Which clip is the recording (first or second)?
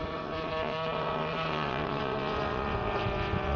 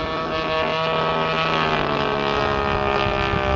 second